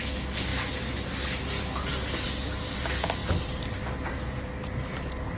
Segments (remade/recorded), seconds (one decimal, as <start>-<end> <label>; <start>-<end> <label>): 0.0-5.4 recorded